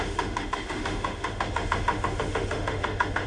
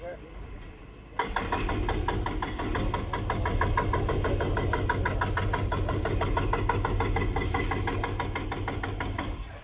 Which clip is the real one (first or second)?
second